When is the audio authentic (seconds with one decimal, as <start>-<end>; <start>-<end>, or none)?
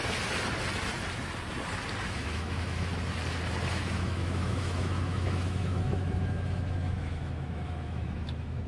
0.0-2.1; 2.9-3.7